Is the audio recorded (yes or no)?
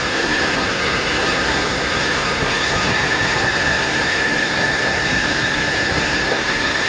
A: no